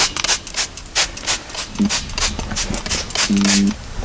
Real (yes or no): yes